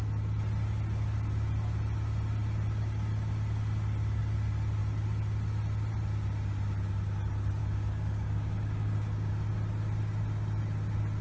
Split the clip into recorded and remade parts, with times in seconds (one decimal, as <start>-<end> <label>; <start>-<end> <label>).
0.0-7.6 recorded; 7.6-9.3 remade; 9.3-11.2 recorded